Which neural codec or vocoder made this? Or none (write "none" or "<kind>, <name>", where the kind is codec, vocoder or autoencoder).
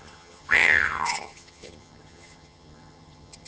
vocoder, HiFi-GAN